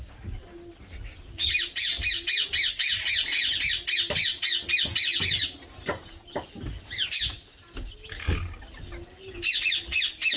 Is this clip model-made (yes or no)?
no